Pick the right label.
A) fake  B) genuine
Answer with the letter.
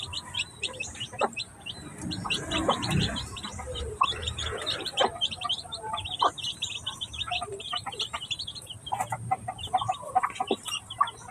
A